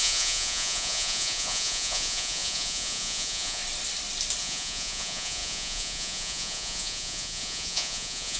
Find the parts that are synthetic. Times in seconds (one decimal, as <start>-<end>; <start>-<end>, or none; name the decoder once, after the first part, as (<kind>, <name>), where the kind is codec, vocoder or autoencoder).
0.0-3.6 (vocoder, Vocos); 4.4-8.4